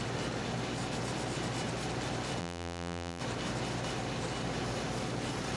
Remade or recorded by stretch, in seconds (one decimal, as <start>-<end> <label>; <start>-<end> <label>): 0.0-2.4 recorded; 2.4-3.2 remade; 3.2-5.6 recorded